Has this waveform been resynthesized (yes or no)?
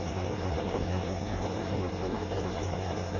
yes